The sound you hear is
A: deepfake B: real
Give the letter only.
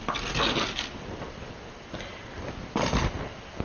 B